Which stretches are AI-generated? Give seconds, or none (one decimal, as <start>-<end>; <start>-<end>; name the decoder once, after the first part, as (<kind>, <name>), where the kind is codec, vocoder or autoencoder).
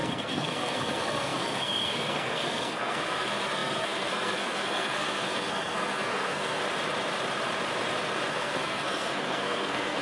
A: 0.0-6.6 (codec, SNAC); 8.3-10.0